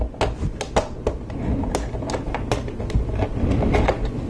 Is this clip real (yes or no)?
yes